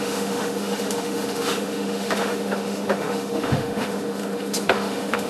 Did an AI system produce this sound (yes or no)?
yes